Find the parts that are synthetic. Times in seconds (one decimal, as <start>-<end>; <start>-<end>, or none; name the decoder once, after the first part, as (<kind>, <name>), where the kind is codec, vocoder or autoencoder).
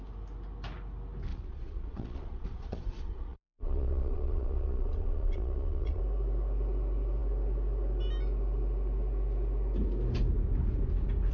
1.3-6.0 (vocoder, Vocos)